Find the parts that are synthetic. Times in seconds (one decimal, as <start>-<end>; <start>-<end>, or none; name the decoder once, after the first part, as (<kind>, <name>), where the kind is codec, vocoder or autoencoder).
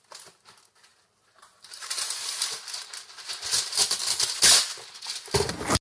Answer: 0.9-2.1 (vocoder, BigVGAN v2)